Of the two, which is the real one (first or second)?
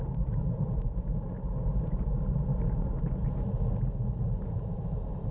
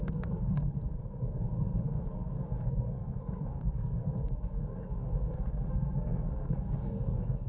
first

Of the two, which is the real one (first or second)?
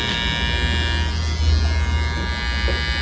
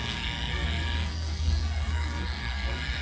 first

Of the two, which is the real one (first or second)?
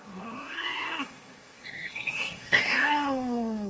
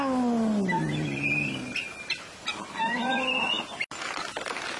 second